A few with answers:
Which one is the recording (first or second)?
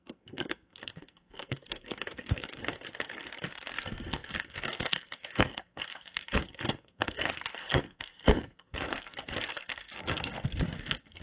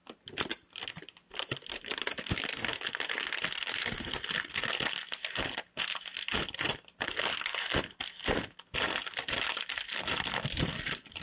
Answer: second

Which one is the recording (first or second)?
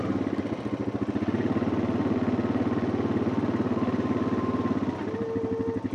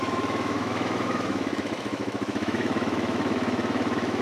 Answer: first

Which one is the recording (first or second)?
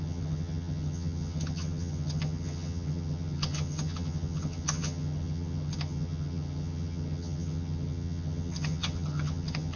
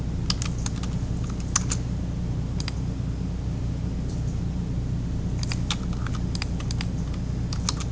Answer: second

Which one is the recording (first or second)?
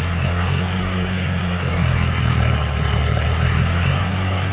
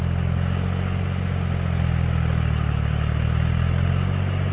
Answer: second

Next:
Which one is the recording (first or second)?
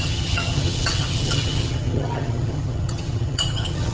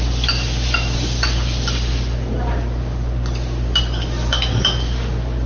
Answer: second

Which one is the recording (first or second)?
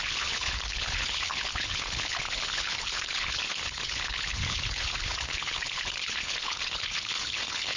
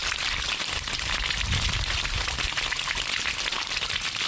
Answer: second